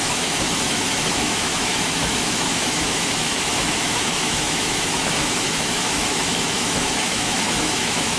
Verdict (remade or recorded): remade